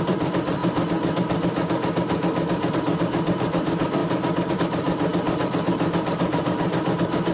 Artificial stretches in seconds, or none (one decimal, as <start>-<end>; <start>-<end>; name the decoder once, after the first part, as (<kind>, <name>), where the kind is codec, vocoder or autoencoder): 0.0-0.6 (vocoder, BigVGAN v2); 2.7-5.1; 6.3-7.3

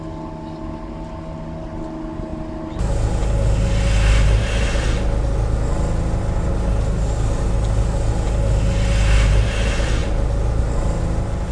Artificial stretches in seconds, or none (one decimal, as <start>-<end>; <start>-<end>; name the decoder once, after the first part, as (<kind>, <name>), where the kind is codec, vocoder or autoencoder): 10.0-11.0 (vocoder, BigVGAN v2)

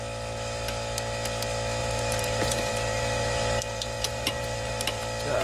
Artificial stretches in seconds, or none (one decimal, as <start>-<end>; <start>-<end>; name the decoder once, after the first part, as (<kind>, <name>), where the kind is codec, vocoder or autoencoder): 1.8-5.0 (vocoder, BigVGAN v2)

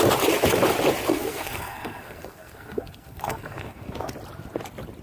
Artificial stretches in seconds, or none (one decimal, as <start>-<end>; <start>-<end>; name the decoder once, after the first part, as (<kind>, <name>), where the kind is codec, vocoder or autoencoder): 1.1-4.1 (codec, SNAC)

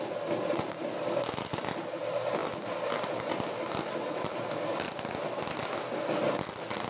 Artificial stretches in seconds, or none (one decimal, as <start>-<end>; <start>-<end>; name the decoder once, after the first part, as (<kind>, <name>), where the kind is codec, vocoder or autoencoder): none

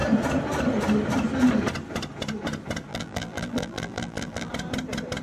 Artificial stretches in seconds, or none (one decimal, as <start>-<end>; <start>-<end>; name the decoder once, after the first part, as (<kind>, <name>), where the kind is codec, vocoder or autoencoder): 2.9-4.5 (vocoder, BigVGAN v2)